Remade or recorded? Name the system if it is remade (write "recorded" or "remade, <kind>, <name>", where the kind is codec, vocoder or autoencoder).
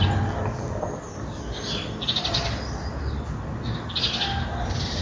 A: recorded